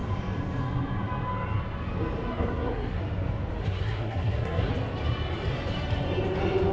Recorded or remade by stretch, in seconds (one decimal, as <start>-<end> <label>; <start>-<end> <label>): 0.0-2.3 recorded; 2.3-3.0 remade; 3.0-3.6 recorded; 3.6-4.7 remade; 4.7-6.7 recorded